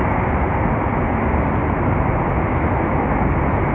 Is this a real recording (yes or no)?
yes